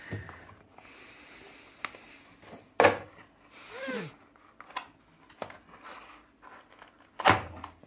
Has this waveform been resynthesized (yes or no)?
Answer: no